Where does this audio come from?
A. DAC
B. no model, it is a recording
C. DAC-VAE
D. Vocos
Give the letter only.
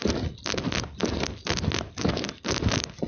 B